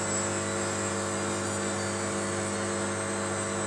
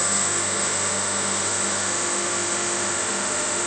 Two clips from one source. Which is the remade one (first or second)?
second